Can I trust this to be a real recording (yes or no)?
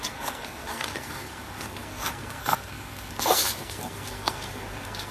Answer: no